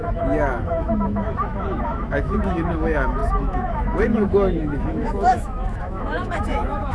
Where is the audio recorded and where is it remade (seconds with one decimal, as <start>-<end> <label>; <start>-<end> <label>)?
0.0-6.9 remade